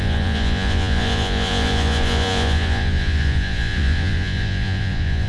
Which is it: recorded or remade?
remade